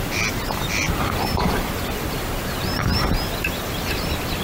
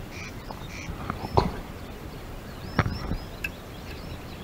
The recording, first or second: first